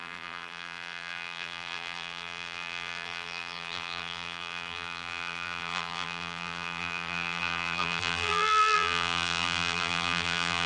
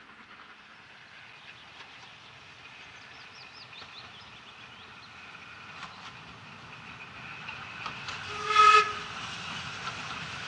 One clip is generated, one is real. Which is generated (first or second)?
first